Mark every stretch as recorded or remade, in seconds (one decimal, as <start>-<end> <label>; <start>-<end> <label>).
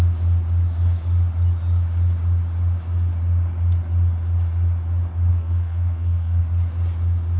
0.0-5.3 recorded; 5.3-6.4 remade; 6.4-7.4 recorded